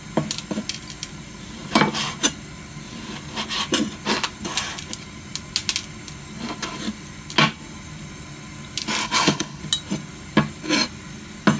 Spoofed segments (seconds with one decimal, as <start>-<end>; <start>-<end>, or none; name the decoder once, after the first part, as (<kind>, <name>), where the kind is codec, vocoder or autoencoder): 9.0-9.6 (codec, HILCodec)